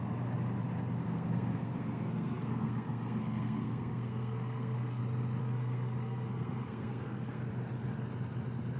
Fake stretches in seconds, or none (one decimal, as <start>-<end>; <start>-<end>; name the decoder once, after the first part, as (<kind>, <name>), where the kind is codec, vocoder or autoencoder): 1.0-5.0 (codec, SNAC); 5.4-7.5